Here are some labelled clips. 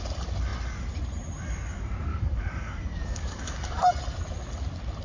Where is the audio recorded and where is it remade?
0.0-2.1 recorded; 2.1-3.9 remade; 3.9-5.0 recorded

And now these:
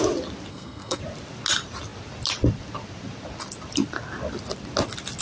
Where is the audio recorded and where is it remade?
0.0-0.5 recorded; 0.5-1.0 remade; 1.0-5.2 recorded